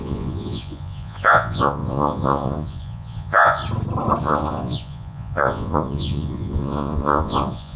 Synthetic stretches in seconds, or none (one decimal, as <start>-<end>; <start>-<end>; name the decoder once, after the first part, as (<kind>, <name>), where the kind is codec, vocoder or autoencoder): 0.0-3.6 (vocoder, Vocos); 4.2-7.8